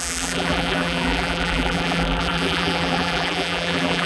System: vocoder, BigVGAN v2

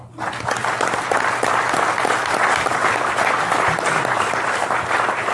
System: none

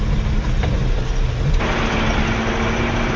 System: none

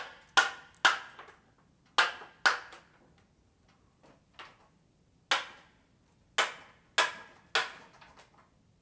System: none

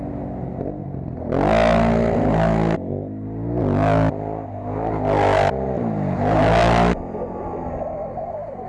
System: none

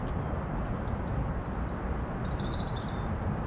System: none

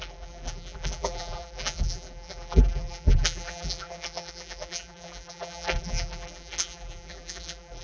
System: vocoder, BigVGAN v2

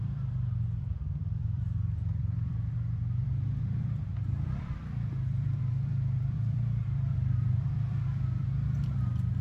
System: vocoder, BigVGAN v2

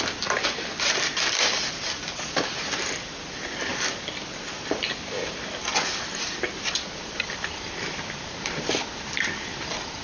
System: vocoder, BigVGAN v2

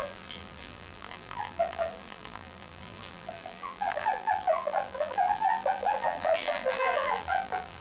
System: vocoder, BigVGAN v2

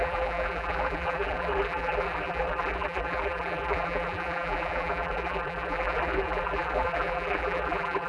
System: vocoder, BigVGAN v2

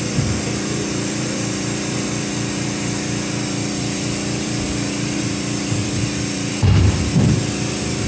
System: vocoder, BigVGAN v2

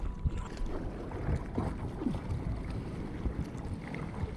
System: none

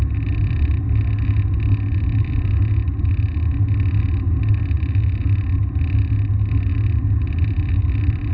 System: none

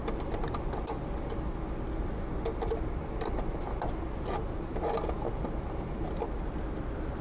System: none